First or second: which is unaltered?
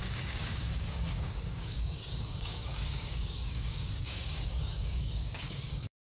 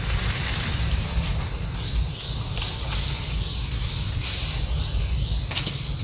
second